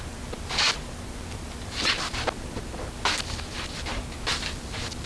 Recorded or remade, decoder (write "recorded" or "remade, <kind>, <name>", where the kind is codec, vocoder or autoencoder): recorded